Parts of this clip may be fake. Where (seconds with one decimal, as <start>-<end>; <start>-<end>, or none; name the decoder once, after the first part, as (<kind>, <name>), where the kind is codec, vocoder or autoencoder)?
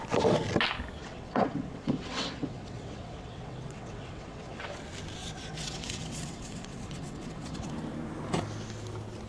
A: 1.0-4.8 (vocoder, WaveNeXt); 5.2-7.7